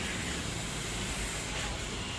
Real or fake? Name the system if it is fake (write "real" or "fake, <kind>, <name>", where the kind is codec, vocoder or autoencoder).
real